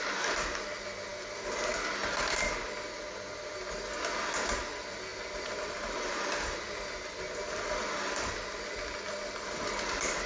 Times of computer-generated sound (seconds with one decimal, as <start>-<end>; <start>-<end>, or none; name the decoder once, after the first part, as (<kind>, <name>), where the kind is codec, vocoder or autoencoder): none